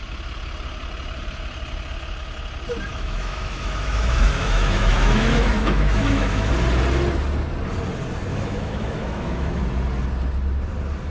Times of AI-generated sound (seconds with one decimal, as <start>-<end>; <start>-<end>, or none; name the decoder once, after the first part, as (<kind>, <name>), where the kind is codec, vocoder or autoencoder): 2.9-6.5 (autoencoder, DAC-VAE); 8.3-9.6